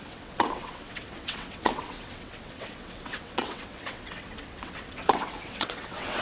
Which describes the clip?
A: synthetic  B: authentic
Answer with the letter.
A